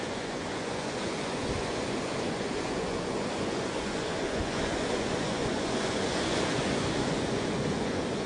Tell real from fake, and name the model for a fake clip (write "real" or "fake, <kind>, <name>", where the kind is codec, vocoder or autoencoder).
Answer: fake, vocoder, Vocos